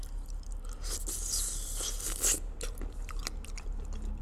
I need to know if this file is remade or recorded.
recorded